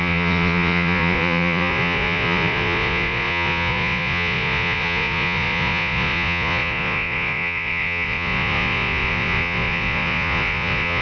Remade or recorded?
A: remade